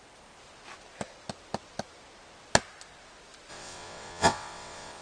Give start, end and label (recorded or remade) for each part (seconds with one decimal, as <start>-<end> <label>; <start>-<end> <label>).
0.0-3.5 recorded; 3.5-5.0 remade